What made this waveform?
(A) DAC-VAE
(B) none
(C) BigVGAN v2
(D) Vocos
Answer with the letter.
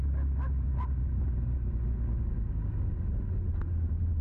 B